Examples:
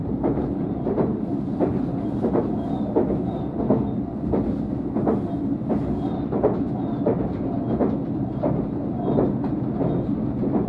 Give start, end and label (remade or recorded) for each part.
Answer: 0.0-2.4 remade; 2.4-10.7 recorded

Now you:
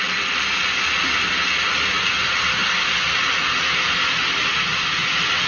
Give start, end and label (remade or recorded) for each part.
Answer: 0.0-5.5 recorded

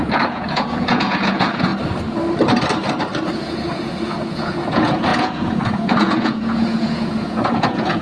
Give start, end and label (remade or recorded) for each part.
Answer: 0.0-1.7 remade; 1.7-3.3 recorded; 3.3-8.0 remade

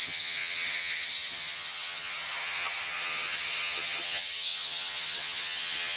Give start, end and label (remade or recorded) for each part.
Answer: 0.0-6.0 remade

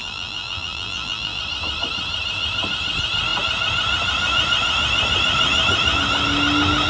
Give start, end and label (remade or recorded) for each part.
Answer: 0.0-1.4 remade; 1.4-6.9 recorded

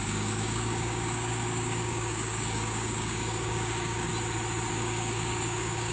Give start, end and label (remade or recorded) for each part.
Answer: 0.0-4.1 remade; 4.1-4.7 recorded; 4.7-5.9 remade